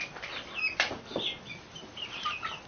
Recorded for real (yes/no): yes